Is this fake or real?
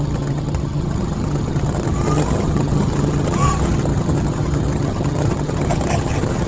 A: fake